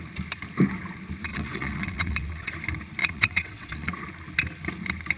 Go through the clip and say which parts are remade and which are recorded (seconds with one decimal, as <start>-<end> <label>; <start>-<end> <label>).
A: 0.0-1.3 recorded; 1.3-2.5 remade; 2.5-3.0 recorded; 3.0-3.9 remade; 3.9-5.2 recorded